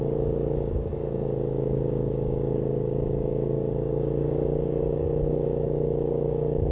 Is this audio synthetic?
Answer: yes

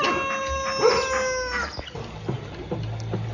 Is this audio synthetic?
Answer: no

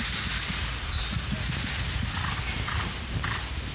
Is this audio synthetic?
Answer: no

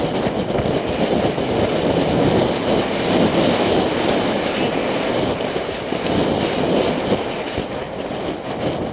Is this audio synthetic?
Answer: no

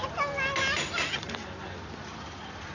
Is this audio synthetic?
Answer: no